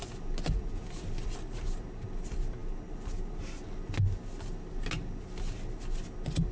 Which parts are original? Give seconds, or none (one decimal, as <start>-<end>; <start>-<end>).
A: 0.0-6.5